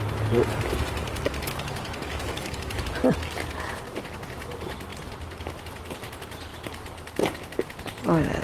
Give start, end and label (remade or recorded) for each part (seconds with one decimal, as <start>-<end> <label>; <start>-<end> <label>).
0.0-1.0 recorded; 1.0-2.8 remade; 2.8-8.4 recorded